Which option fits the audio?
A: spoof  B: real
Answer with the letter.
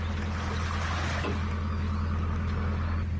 B